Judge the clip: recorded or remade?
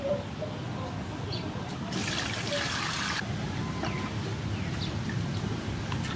recorded